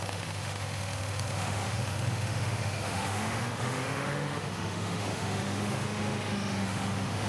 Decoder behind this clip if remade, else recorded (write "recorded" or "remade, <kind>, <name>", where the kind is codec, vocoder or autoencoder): remade, autoencoder, DAC-VAE